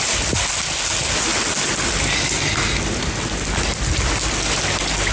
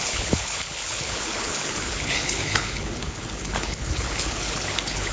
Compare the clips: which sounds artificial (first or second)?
second